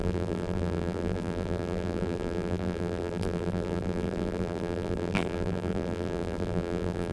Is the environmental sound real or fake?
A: fake